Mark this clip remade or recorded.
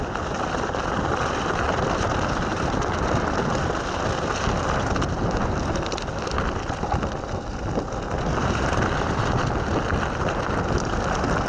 recorded